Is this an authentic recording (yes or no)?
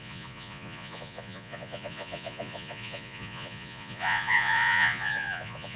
no